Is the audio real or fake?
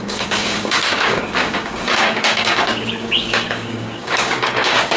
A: fake